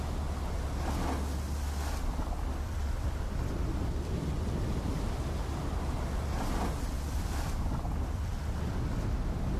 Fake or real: real